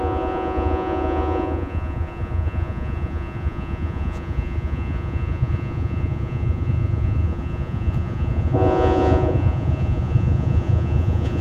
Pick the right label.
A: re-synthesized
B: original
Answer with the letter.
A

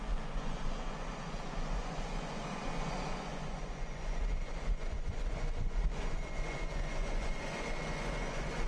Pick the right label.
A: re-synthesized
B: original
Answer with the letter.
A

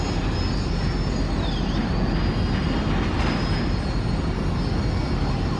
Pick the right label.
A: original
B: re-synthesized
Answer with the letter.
A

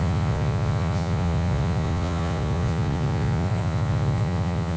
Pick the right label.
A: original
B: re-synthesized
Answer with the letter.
B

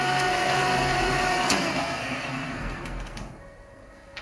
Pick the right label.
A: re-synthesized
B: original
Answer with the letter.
A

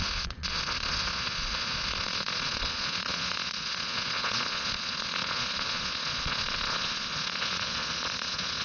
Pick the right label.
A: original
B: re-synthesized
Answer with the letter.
B